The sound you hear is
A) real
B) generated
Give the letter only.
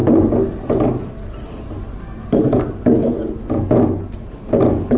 A